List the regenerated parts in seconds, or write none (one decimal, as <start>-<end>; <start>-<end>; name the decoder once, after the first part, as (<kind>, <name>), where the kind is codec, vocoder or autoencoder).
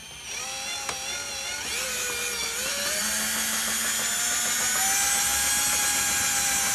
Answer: 2.4-3.0 (vocoder, BigVGAN v2)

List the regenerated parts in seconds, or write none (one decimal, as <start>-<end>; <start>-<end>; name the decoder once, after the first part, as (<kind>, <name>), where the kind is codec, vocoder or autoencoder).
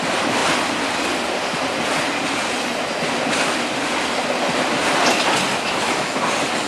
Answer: 5.5-6.2 (autoencoder, DAC-VAE)